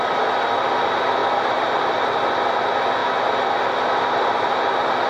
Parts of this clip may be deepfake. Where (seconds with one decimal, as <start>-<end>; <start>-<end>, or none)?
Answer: 1.2-2.1